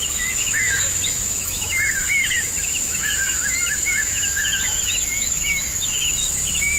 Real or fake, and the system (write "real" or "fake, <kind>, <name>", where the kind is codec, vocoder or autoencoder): fake, autoencoder, DAC-VAE